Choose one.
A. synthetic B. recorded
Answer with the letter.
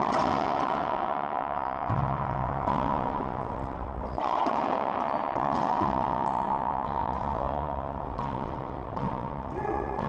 A